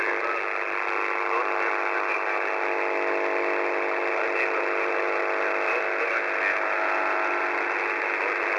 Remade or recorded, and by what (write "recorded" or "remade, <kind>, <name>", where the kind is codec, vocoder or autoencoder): recorded